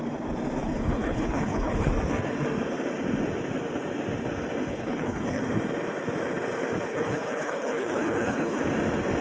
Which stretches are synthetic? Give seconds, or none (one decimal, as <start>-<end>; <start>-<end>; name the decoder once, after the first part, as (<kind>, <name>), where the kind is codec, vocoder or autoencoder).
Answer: 0.6-1.9 (codec, HILCodec); 4.7-5.4; 6.9-8.6